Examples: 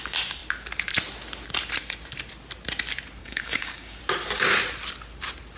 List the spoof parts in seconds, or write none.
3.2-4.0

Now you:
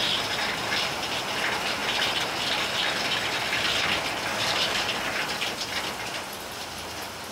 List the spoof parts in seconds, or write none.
4.3-4.8

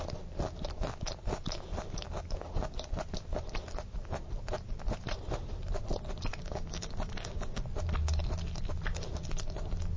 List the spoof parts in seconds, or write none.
6.3-7.6

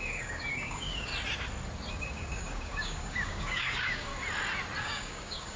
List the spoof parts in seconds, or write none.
0.0-1.1; 1.9-4.1; 4.8-5.6

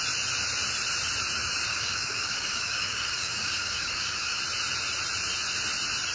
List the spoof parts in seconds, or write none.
1.7-4.4

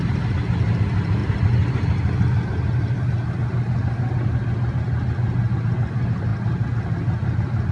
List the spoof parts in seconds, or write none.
none

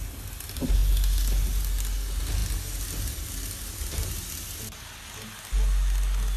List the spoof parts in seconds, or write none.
none